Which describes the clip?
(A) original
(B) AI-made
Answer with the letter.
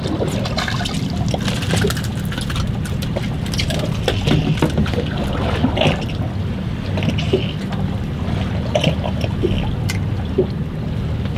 A